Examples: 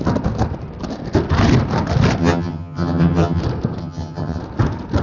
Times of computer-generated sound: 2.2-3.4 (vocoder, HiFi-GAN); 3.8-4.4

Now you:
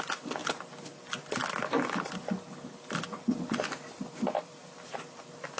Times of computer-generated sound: 0.0-0.4 (vocoder, BigVGAN v2); 3.4-5.6

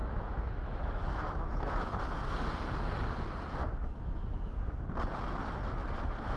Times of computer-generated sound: 0.0-2.0 (autoencoder, DAC-VAE); 3.6-4.7

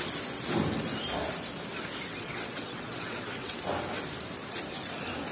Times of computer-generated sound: 2.1-3.6 (vocoder, WaveNeXt)

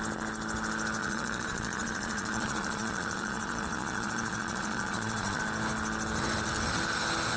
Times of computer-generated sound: 1.0-5.4 (vocoder, Vocos)

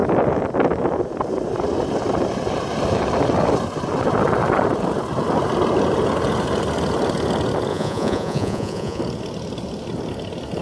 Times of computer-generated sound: 7.7-9.0 (vocoder, Vocos)

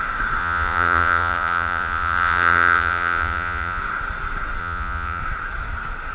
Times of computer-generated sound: 0.4-3.8 (vocoder, Vocos); 4.6-5.2

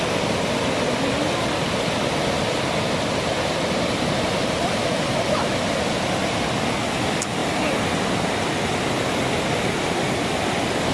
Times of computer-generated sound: none